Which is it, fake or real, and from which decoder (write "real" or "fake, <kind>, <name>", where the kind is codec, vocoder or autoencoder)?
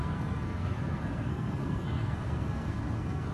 fake, codec, SNAC